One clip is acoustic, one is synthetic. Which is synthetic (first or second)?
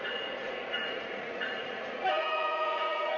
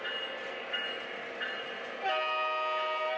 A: first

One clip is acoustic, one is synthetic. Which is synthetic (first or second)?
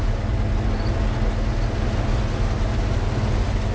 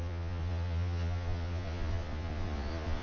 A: second